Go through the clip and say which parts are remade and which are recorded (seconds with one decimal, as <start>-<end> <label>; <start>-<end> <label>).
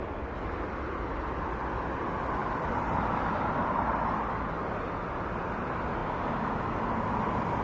0.0-2.4 recorded; 2.4-3.9 remade; 3.9-7.6 recorded